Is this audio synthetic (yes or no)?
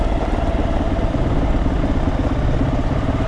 no